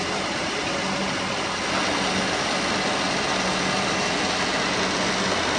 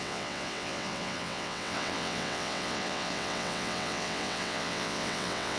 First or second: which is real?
first